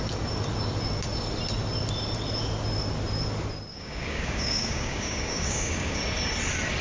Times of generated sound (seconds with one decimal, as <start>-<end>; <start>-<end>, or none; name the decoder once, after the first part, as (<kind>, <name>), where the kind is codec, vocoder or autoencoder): 3.7-6.0 (codec, DAC)